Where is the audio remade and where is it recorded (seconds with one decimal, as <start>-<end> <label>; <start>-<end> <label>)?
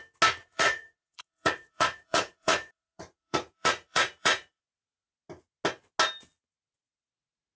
0.0-0.4 recorded; 0.4-4.6 remade; 4.6-7.6 recorded